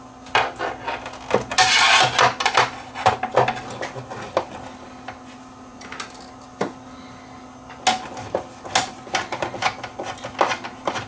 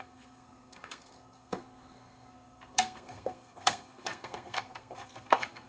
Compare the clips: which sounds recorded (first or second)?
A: first